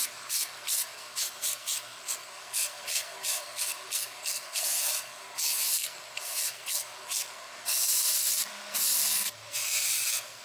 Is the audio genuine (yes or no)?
no